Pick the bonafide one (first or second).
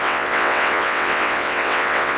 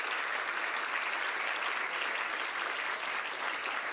second